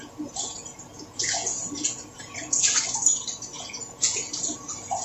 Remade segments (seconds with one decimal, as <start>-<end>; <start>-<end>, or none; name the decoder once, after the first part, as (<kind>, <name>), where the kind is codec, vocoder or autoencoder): 0.0-3.1 (vocoder, Vocos); 3.6-5.0